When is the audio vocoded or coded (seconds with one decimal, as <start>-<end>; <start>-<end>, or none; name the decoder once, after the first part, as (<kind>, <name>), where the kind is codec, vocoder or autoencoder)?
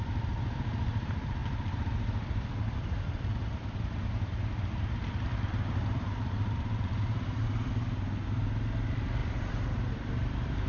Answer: 1.4-4.1 (vocoder, BigVGAN v2); 5.0-7.7; 9.2-10.7